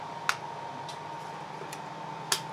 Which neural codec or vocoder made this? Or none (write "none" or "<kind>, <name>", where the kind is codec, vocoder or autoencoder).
none